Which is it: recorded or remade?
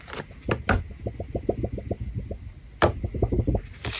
recorded